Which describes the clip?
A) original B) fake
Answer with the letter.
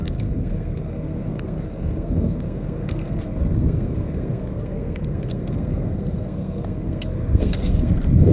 B